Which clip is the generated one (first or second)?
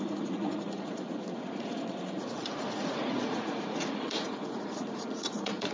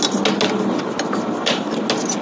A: first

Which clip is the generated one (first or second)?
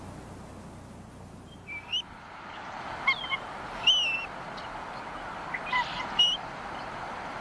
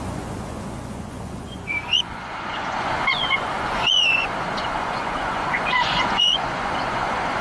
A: second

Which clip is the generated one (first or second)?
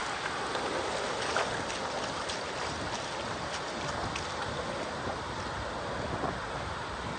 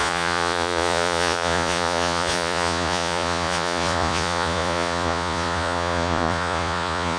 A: second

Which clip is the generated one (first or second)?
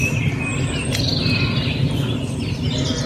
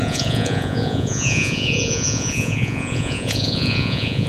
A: second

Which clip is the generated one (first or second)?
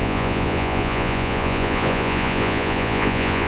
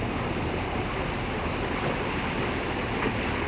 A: first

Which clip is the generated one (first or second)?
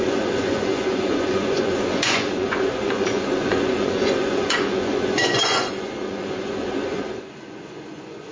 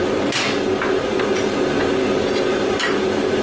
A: first